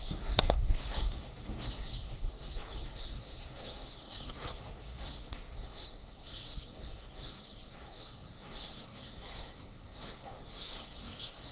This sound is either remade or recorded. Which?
remade